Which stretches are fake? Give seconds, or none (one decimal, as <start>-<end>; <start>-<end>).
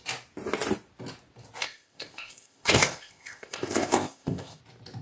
1.6-4.6